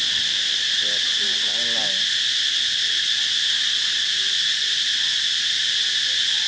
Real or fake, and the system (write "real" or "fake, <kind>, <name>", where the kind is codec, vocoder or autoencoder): real